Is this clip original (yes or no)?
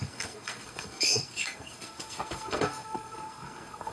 no